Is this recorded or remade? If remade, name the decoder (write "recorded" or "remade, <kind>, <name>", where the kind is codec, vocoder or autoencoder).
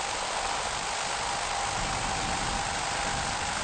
recorded